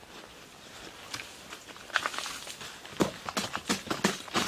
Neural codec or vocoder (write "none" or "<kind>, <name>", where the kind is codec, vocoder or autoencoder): none